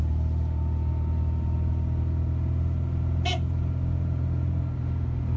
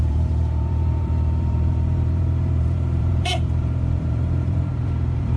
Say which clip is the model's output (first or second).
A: second